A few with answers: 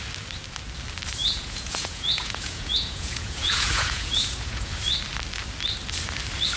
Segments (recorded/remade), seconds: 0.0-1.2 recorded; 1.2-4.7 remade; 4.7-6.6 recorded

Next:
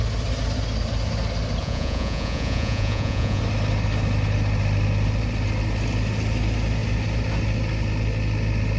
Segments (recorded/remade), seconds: 0.0-1.6 recorded; 1.6-3.4 remade; 3.4-8.8 recorded